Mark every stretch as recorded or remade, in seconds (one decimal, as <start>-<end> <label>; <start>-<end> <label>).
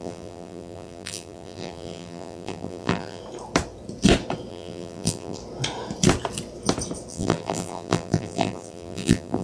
0.0-3.2 remade; 3.2-4.5 recorded; 4.5-5.4 remade; 5.4-7.1 recorded; 7.1-9.4 remade